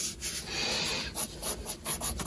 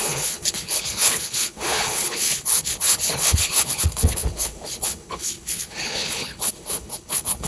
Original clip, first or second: first